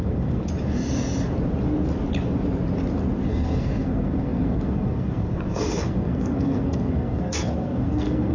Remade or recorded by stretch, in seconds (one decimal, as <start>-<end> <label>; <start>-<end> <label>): 0.0-0.4 remade; 0.4-3.3 recorded; 3.3-8.3 remade